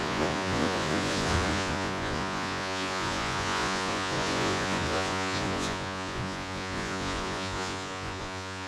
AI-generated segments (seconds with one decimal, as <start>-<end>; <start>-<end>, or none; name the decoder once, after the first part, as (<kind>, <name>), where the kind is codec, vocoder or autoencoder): 0.0-8.7 (vocoder, Vocos)